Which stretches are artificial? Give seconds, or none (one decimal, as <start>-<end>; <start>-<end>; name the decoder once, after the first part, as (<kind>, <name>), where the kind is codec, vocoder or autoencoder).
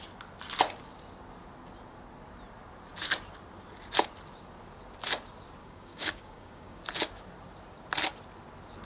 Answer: 5.6-6.8 (codec, DAC)